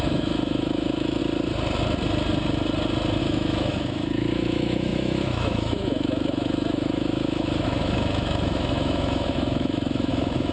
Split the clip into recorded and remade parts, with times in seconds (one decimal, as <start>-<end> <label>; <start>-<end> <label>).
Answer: 0.0-1.2 remade; 1.2-3.2 recorded; 3.2-10.5 remade

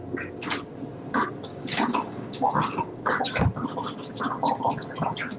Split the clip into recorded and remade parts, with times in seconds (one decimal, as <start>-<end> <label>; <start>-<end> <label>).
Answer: 0.0-1.5 recorded; 1.5-3.4 remade; 3.4-5.4 recorded

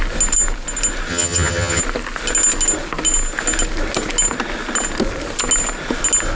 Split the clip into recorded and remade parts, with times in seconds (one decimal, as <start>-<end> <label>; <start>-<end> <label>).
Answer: 0.0-1.1 recorded; 1.1-1.8 remade; 1.8-6.4 recorded

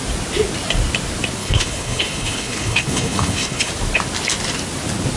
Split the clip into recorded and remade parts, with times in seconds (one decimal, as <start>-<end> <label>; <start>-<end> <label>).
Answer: 0.0-1.4 recorded; 1.4-3.7 remade; 3.7-5.2 recorded

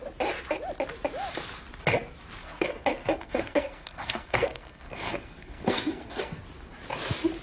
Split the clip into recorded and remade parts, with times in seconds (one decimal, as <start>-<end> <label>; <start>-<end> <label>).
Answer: 0.0-2.4 recorded; 2.4-6.4 remade; 6.4-7.4 recorded

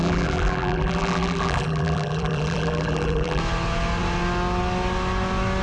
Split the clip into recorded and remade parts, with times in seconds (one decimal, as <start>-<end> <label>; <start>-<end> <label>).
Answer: 0.0-3.4 remade; 3.4-5.6 recorded

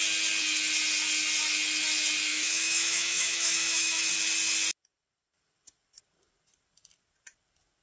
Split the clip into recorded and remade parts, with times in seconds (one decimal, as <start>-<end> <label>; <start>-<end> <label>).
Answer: 0.0-2.3 recorded; 2.3-4.1 remade; 4.1-7.8 recorded